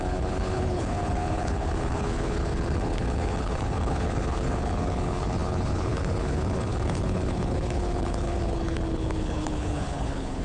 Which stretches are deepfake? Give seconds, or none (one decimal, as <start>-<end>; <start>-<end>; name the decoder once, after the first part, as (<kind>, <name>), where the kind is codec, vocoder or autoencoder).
0.0-10.4 (codec, HILCodec)